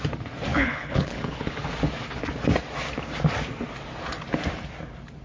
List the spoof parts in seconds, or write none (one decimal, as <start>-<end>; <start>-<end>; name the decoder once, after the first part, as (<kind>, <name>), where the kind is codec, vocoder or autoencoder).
0.5-1.7 (codec, HILCodec)